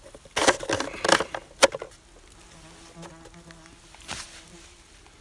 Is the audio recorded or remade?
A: recorded